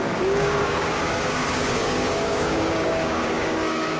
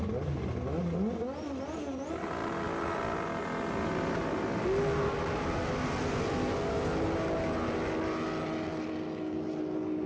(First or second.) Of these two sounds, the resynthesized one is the first